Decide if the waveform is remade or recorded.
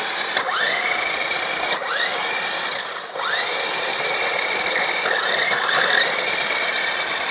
recorded